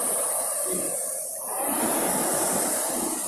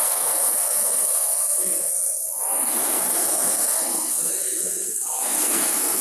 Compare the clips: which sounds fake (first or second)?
second